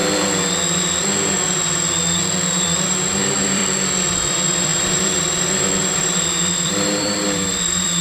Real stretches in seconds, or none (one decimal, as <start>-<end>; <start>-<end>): 0.0-2.6; 3.6-4.3